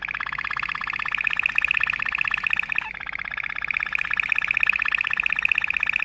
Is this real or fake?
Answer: real